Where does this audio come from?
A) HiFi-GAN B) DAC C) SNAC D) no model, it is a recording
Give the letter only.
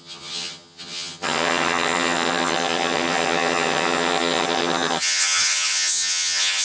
A